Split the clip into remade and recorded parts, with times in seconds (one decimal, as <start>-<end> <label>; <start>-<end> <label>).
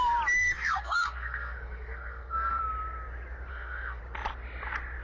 0.0-0.4 recorded; 0.4-2.6 remade; 2.6-3.5 recorded; 3.5-4.0 remade; 4.0-5.0 recorded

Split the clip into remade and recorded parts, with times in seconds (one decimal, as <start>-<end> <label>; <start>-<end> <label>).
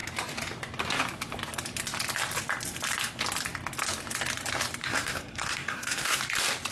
0.0-4.8 recorded; 4.8-6.2 remade; 6.2-6.7 recorded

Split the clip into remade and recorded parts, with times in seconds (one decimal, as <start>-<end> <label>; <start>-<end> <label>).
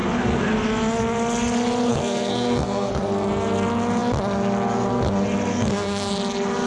0.0-1.9 recorded; 1.9-2.9 remade; 2.9-5.5 recorded; 5.5-6.1 remade; 6.1-6.7 recorded